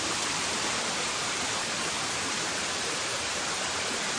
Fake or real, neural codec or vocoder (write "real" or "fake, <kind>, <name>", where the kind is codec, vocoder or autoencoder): real